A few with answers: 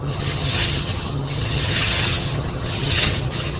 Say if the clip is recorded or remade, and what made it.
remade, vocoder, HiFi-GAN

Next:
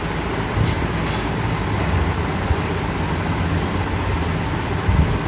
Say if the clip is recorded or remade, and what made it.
recorded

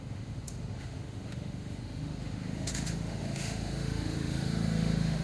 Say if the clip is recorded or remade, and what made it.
remade, autoencoder, DAC-VAE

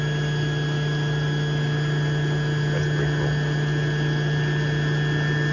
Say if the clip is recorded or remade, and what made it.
recorded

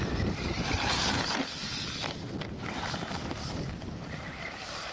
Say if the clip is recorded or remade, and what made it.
recorded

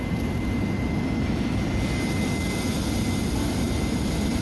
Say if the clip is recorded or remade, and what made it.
recorded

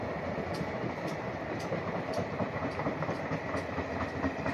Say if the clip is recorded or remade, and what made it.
recorded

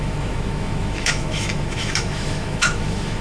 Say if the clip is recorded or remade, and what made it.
remade, autoencoder, DAC-VAE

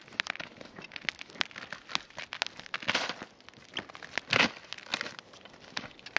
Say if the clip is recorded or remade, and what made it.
recorded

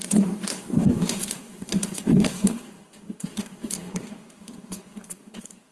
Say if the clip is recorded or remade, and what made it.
remade, codec, SNAC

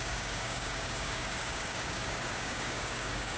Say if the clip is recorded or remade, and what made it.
remade, codec, DAC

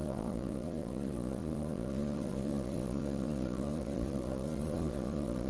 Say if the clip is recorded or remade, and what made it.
remade, vocoder, Vocos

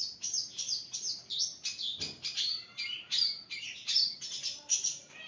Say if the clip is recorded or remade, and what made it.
remade, vocoder, BigVGAN v2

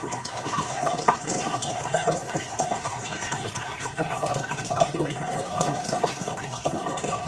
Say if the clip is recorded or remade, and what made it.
remade, codec, SNAC